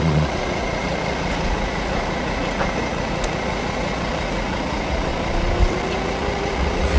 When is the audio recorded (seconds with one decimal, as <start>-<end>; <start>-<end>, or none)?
5.1-5.7